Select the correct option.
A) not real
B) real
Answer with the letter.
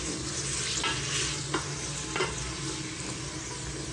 B